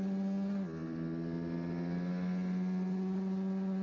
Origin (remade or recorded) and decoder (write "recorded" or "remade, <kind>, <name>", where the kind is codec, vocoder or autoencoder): recorded